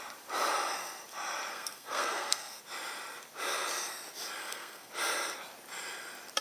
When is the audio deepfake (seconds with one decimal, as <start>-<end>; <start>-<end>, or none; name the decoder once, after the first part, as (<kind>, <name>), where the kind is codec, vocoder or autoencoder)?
1.5-2.6 (codec, SNAC); 4.4-4.9